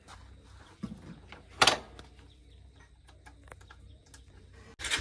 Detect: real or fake real